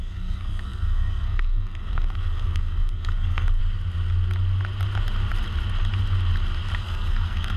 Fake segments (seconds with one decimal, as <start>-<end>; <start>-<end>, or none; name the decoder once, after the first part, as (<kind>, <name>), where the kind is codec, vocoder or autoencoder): 0.0-3.6 (codec, SNAC); 6.8-7.6